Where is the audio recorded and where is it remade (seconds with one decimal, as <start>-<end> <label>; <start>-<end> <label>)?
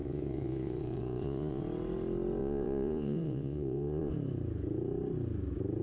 0.0-1.6 remade; 1.6-2.4 recorded; 2.4-4.1 remade; 4.1-5.8 recorded